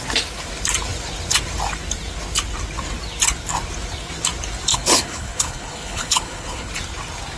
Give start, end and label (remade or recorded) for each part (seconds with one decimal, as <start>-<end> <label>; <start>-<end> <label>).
0.0-4.7 recorded; 4.7-6.7 remade; 6.7-7.4 recorded